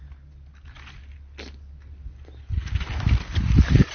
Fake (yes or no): no